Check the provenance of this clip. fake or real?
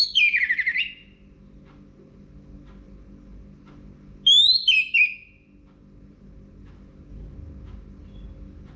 real